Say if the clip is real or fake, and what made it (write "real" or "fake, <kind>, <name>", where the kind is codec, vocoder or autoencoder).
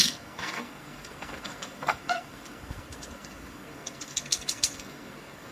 fake, codec, SNAC